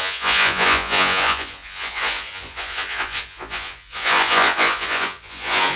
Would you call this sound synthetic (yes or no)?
yes